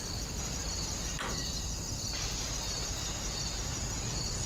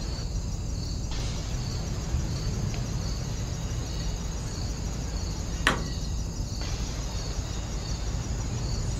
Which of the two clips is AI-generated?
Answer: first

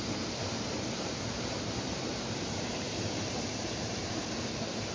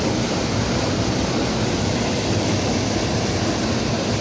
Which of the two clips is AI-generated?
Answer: first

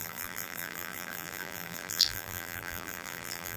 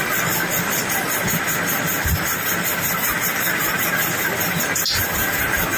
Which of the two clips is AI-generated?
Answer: first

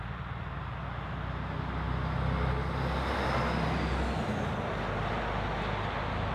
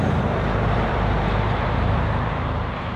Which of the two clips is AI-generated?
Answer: second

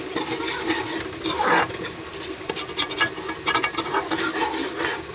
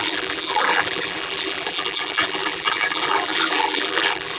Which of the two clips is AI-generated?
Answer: second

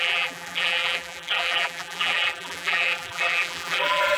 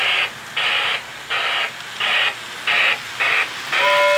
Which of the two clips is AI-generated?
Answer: first